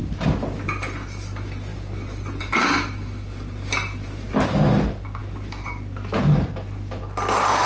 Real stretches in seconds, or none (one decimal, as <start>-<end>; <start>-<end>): 0.0-7.7